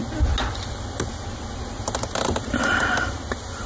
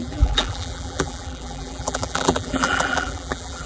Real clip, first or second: first